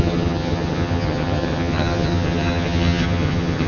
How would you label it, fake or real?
fake